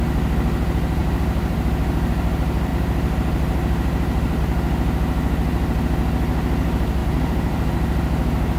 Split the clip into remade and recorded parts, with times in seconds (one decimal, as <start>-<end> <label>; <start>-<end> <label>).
0.0-1.0 recorded; 1.0-1.7 remade; 1.7-2.7 recorded; 2.7-4.4 remade; 4.4-7.0 recorded; 7.0-8.6 remade